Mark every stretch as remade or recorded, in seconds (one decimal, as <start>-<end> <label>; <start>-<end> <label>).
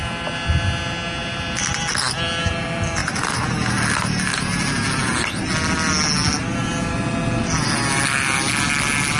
0.0-9.2 recorded